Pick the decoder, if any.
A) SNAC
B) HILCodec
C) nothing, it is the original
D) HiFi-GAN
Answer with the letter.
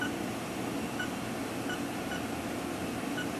C